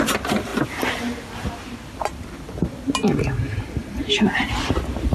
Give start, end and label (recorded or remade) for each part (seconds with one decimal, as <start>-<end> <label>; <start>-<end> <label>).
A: 0.0-5.1 recorded